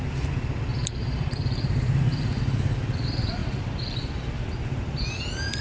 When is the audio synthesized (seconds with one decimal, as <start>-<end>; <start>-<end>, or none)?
0.7-2.4